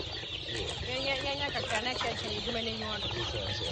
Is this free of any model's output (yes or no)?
yes